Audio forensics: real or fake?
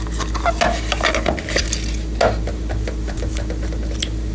real